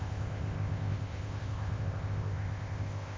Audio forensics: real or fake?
fake